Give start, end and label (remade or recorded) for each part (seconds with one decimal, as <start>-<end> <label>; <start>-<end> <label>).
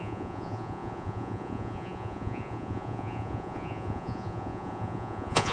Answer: 0.0-5.5 remade